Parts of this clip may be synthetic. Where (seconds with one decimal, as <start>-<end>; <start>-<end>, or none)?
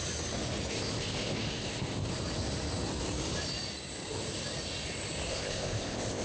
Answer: 0.7-2.1; 5.3-6.2